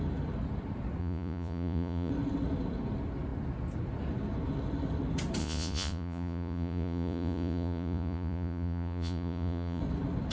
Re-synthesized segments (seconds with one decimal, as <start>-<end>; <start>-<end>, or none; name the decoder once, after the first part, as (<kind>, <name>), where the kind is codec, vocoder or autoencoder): 1.0-2.1 (vocoder, Vocos); 5.4-9.8